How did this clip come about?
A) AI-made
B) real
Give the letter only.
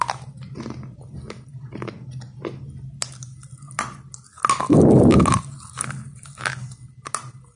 B